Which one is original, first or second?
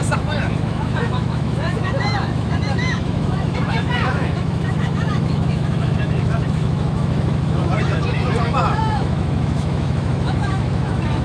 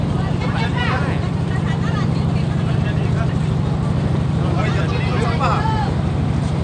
second